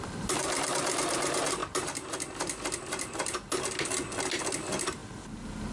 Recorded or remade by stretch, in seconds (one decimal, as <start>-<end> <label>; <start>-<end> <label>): 0.0-5.7 recorded